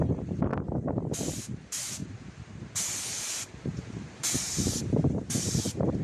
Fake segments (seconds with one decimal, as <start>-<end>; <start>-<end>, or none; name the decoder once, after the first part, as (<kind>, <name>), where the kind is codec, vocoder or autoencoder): 0.0-0.5 (vocoder, BigVGAN v2); 1.1-6.0